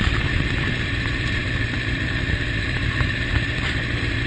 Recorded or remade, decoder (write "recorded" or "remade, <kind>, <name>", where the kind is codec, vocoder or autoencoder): remade, vocoder, BigVGAN v2